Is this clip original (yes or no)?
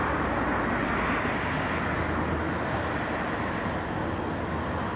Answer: yes